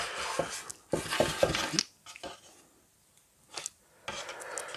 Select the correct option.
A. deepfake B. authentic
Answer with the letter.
B